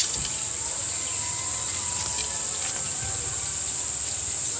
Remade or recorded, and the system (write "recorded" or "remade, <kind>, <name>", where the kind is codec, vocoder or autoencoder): recorded